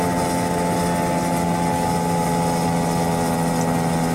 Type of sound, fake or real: real